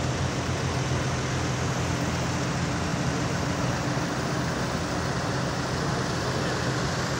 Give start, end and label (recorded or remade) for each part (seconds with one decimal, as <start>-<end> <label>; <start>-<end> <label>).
0.0-2.9 recorded; 2.9-3.7 remade; 3.7-7.2 recorded